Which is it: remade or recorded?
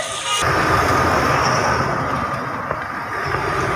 recorded